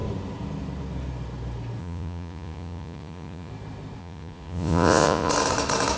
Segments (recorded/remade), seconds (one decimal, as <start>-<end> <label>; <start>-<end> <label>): 0.0-1.8 recorded; 1.8-3.5 remade; 3.5-4.0 recorded; 4.0-5.3 remade; 5.3-6.0 recorded